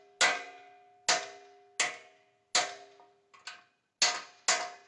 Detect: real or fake real